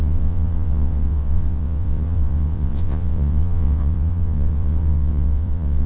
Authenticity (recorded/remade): remade